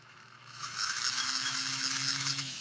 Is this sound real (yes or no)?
no